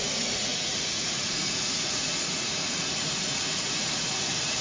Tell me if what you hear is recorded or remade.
remade